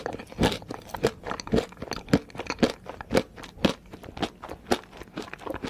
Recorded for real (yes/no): yes